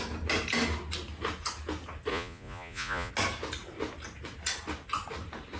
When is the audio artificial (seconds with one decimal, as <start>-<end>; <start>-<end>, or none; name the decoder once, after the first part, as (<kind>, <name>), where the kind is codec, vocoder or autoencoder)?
2.1-3.1 (vocoder, Vocos)